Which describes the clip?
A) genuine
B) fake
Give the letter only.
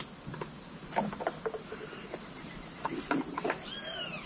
A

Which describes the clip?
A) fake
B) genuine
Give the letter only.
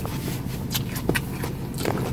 B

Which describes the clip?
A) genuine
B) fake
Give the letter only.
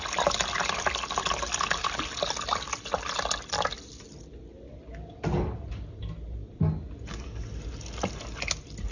A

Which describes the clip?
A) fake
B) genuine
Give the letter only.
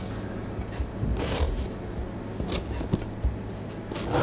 B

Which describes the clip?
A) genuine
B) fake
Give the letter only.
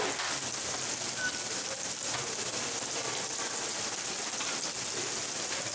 A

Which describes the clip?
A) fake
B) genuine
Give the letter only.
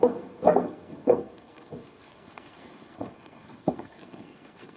A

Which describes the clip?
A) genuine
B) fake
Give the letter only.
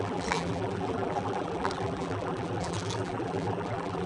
B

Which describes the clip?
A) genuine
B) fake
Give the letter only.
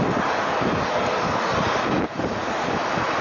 A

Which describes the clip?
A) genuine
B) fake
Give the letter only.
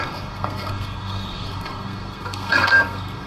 B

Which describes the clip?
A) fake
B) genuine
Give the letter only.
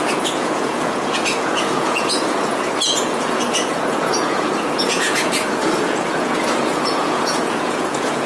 A